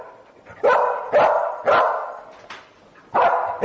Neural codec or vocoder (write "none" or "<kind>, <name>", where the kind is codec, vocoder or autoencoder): none